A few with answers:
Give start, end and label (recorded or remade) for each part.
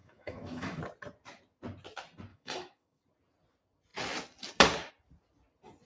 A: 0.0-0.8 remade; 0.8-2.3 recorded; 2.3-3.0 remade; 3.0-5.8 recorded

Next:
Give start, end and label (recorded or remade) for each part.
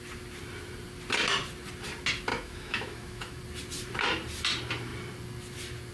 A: 0.0-2.3 recorded; 2.3-3.4 remade; 3.4-5.9 recorded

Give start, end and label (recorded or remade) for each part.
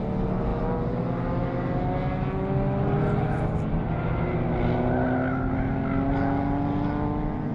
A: 0.0-7.5 recorded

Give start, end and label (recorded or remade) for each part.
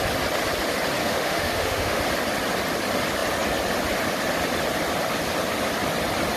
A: 0.0-1.0 recorded; 1.0-2.0 remade; 2.0-6.4 recorded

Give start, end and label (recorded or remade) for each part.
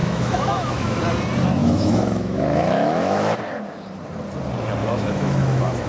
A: 0.0-1.0 remade; 1.0-1.6 recorded; 1.6-3.4 remade; 3.4-4.8 recorded; 4.8-5.9 remade